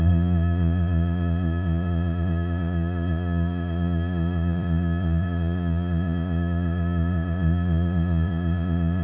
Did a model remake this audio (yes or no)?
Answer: yes